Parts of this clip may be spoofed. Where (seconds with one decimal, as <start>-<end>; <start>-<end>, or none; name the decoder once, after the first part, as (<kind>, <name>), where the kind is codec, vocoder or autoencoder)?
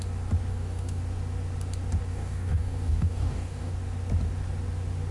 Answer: 0.5-1.0 (codec, DAC); 2.1-3.7